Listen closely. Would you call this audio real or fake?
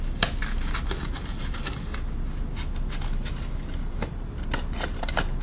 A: real